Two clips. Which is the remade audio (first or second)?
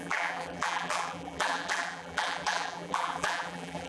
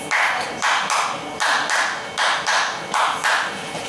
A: first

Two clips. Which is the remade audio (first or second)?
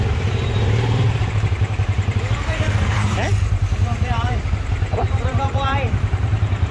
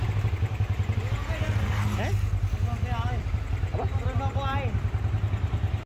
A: first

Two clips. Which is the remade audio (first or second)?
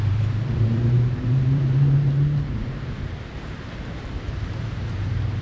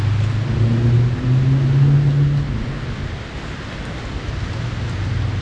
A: first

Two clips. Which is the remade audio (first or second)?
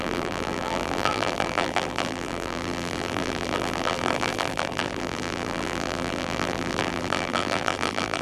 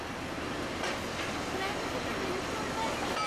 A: first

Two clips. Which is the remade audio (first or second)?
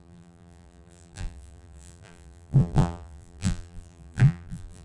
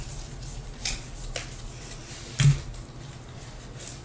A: first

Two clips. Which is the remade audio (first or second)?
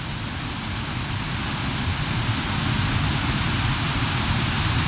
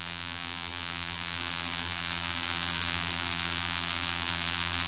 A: second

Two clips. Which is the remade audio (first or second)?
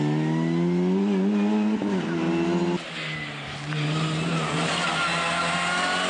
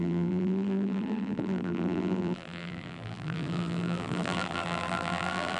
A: second